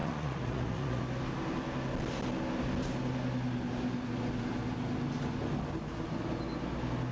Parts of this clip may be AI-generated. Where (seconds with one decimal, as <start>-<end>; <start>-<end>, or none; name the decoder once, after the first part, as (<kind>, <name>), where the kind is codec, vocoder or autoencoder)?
0.0-1.0 (vocoder, Vocos)